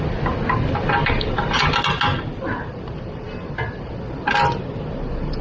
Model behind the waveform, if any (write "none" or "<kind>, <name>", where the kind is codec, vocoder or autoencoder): none